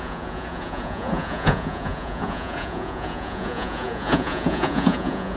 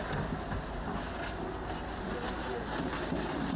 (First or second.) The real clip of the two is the second